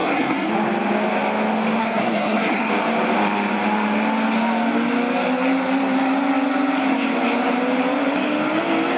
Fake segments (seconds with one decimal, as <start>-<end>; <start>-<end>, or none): 0.0-0.5; 1.8-2.7